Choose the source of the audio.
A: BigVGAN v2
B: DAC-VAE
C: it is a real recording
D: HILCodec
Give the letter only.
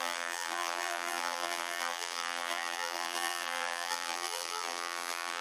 A